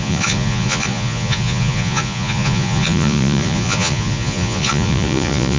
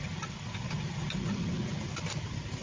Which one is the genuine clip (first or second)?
second